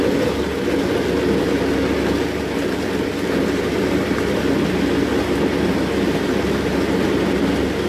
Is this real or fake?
real